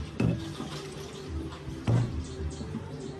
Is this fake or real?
real